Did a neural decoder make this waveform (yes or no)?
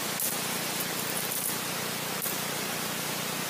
no